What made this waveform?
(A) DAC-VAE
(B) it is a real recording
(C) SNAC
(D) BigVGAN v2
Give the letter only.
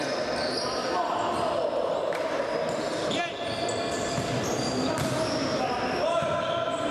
B